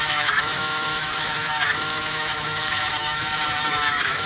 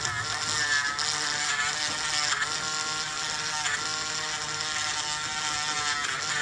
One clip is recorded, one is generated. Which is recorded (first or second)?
second